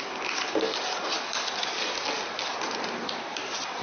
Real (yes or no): yes